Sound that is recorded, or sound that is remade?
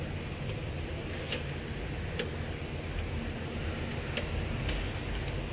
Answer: recorded